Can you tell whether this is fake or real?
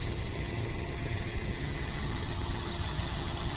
fake